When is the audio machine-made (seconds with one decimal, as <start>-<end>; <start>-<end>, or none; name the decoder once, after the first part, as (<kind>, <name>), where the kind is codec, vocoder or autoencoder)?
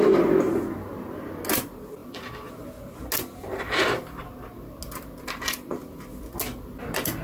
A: 3.4-4.2 (vocoder, BigVGAN v2)